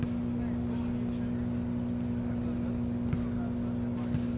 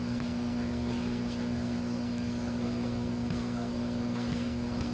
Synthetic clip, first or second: second